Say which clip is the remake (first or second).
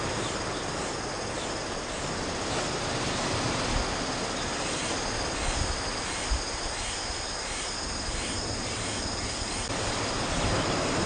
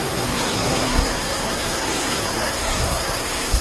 second